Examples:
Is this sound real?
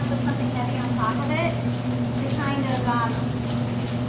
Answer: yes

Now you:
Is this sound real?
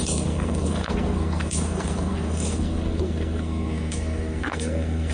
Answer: no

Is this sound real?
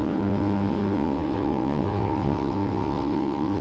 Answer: no